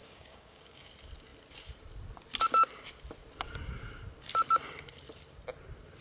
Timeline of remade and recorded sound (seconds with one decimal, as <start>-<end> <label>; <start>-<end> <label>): 0.0-0.9 remade; 0.9-6.0 recorded